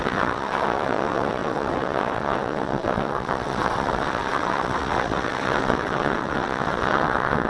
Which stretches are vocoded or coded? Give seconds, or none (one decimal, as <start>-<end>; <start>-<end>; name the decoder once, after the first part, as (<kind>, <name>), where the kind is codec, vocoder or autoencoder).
0.0-7.5 (vocoder, WaveNeXt)